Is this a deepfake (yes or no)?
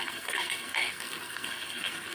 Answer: yes